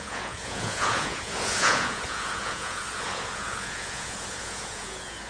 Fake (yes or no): yes